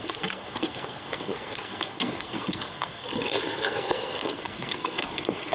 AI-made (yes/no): yes